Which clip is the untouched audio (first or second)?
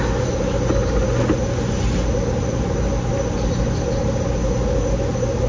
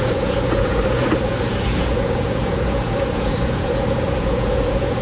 first